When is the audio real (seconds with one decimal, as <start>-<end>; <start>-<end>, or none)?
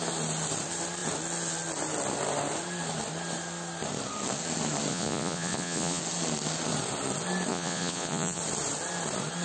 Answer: 0.0-4.9; 6.0-7.5; 8.4-9.4